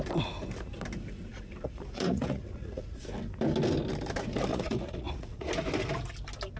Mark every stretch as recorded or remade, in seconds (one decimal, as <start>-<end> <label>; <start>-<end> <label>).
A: 0.0-1.3 recorded; 1.3-3.0 remade; 3.0-4.5 recorded; 4.5-5.5 remade; 5.5-6.6 recorded